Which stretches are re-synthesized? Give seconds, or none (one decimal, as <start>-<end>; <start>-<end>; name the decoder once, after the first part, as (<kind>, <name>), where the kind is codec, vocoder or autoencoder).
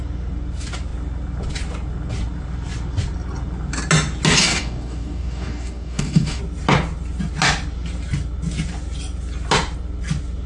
4.4-6.4 (codec, DAC)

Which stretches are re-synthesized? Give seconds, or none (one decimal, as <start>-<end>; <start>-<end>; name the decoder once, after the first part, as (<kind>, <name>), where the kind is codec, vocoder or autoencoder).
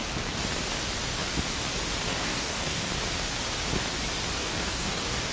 2.1-2.9 (codec, DAC); 4.4-5.3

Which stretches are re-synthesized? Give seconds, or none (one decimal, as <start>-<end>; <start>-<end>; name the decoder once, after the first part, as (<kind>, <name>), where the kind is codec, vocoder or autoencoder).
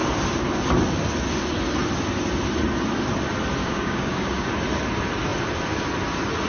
3.6-4.5 (codec, DAC)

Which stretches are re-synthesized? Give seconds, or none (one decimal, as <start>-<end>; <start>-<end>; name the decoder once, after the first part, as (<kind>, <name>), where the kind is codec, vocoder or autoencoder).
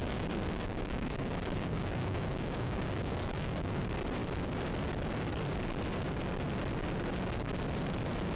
0.0-3.8 (codec, DAC)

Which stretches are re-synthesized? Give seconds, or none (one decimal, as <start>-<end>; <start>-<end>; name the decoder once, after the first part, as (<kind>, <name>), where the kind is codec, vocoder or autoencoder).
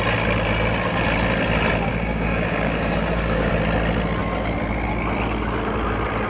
1.9-3.5 (codec, DAC)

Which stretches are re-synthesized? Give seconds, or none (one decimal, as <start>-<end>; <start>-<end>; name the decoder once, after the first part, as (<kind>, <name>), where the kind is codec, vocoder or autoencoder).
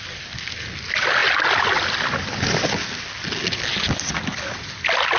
none